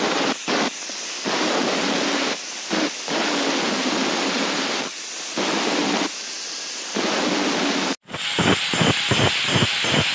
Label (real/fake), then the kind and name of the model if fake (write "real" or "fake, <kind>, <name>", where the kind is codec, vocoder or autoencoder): real